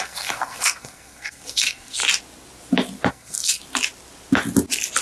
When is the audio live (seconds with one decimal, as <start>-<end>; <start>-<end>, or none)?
2.0-3.1; 3.6-5.0

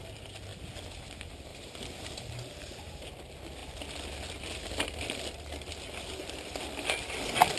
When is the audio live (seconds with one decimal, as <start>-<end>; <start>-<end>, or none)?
0.0-1.5; 3.1-7.6

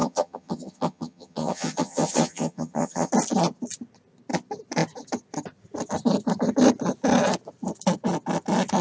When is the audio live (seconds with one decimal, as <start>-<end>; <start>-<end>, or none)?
3.1-8.8

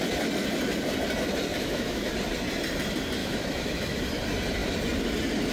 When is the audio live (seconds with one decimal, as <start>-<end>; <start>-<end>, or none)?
0.0-1.5; 2.1-3.2; 4.0-5.5

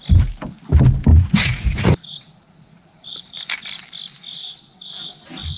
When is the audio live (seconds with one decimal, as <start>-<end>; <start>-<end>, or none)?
0.0-1.1; 3.4-5.6

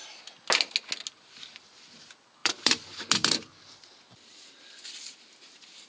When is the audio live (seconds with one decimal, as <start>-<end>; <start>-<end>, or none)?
0.0-2.4